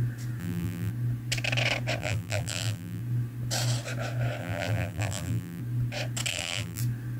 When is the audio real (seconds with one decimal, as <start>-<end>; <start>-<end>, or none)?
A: 0.0-0.4; 0.9-2.0; 3.0-4.4; 5.6-6.3; 6.8-7.2